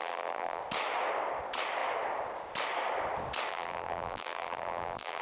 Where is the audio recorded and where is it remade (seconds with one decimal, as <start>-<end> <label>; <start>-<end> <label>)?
0.0-0.6 remade; 0.6-3.5 recorded; 3.5-5.2 remade